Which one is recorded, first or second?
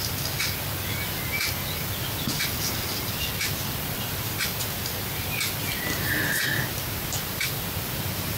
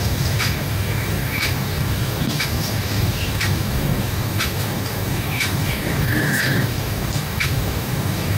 first